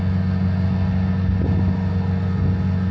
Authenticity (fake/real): real